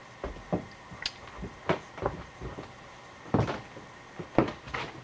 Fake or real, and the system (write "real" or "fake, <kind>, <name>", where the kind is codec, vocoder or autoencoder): real